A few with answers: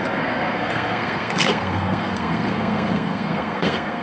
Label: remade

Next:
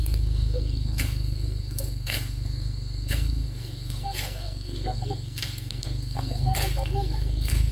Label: remade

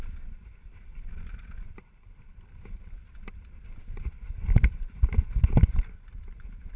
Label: recorded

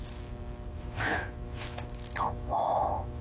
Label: recorded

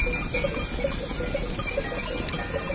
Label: recorded